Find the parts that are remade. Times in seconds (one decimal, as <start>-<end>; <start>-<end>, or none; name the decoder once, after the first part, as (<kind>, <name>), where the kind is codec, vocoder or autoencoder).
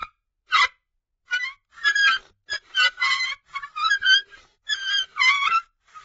none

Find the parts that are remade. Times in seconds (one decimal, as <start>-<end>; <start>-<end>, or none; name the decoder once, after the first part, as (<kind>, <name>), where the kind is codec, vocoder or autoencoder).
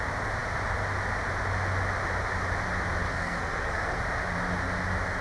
3.1-4.0 (codec, SNAC)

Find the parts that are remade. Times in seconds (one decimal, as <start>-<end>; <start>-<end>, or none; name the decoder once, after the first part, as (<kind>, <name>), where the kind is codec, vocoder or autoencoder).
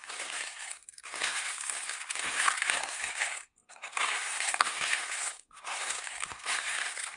0.0-7.2 (codec, SNAC)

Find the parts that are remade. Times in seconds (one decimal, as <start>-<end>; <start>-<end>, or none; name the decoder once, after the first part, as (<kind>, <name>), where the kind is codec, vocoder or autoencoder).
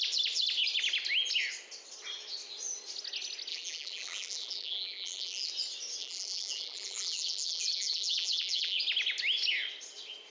3.5-5.5 (vocoder, BigVGAN v2); 6.0-8.8